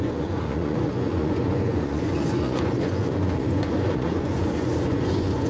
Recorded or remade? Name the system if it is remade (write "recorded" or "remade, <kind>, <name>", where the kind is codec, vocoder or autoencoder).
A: remade, vocoder, Vocos